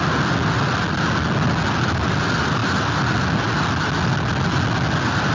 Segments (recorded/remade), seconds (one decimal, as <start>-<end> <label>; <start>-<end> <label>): 0.0-5.3 recorded